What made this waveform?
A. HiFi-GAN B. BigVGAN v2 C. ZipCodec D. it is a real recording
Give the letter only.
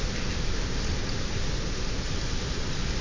D